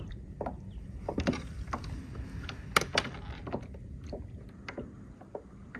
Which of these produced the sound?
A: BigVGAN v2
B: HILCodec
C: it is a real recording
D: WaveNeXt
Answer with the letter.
C